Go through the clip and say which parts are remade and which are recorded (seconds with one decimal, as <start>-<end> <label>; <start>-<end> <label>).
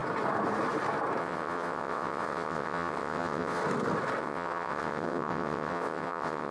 0.0-1.2 recorded; 1.2-3.6 remade; 3.6-4.2 recorded; 4.2-6.5 remade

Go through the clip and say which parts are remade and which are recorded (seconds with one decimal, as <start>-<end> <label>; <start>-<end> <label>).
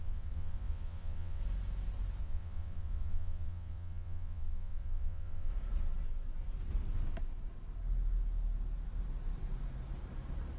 0.0-1.4 remade; 1.4-2.2 recorded; 2.2-5.5 remade; 5.5-10.6 recorded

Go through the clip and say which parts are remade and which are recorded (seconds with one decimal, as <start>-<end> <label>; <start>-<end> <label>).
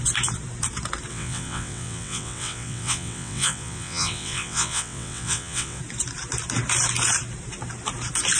0.0-1.1 recorded; 1.1-5.8 remade; 5.8-8.4 recorded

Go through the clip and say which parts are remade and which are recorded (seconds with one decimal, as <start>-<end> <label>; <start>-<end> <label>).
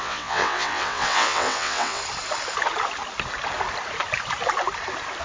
0.0-2.0 remade; 2.0-5.2 recorded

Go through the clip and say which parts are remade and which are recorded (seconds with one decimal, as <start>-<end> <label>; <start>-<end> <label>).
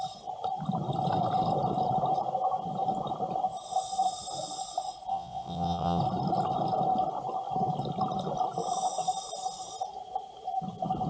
0.0-5.1 recorded; 5.1-6.0 remade; 6.0-11.1 recorded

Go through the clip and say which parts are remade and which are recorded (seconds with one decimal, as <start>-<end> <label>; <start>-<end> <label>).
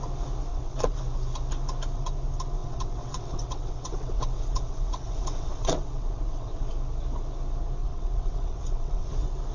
0.0-0.5 recorded; 0.5-1.0 remade; 1.0-2.6 recorded; 2.6-6.7 remade; 6.7-7.8 recorded; 7.8-9.1 remade; 9.1-9.5 recorded